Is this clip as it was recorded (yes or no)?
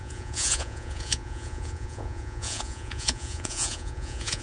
no